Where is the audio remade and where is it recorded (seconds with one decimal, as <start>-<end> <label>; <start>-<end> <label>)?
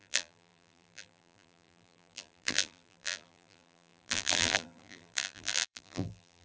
0.0-6.4 remade